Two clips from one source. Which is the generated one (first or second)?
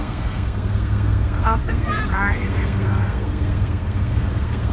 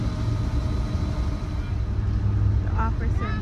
first